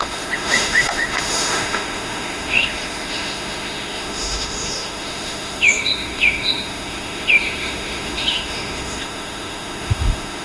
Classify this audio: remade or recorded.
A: remade